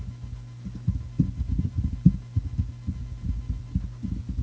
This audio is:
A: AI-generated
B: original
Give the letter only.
B